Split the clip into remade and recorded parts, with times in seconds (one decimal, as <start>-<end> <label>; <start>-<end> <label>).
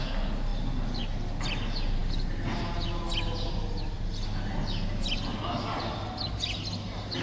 0.0-7.2 recorded